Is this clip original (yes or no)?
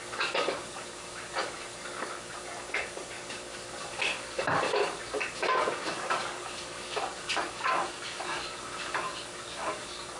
no